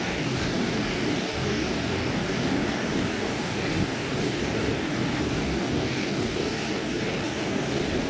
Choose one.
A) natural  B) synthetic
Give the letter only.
B